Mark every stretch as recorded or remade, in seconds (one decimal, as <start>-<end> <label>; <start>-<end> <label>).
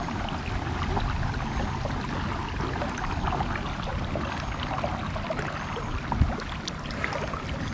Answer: 0.0-7.7 recorded